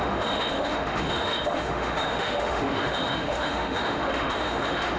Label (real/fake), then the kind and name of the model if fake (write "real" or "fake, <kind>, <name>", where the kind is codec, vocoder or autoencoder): fake, autoencoder, DAC-VAE